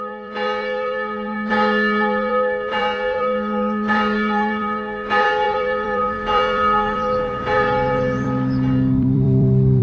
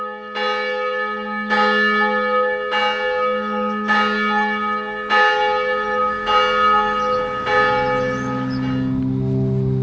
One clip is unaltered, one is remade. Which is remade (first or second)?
first